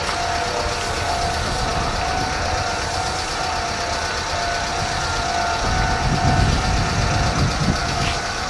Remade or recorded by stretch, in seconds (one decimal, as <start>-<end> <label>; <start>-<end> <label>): 0.0-7.8 recorded; 7.8-8.5 remade